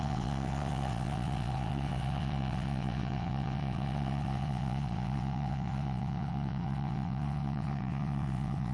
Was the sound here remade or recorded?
remade